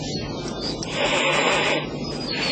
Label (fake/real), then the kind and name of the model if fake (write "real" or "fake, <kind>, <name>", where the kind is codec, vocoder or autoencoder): real